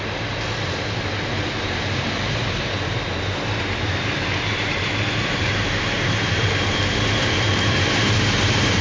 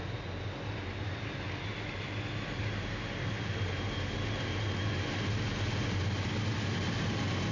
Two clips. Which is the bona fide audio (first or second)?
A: second